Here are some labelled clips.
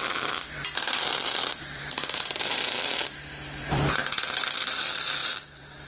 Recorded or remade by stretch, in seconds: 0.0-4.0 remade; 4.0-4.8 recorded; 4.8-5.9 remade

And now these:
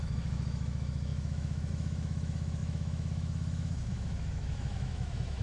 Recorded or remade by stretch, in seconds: 0.0-5.4 remade

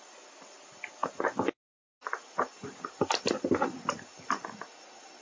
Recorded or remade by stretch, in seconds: 0.0-5.2 recorded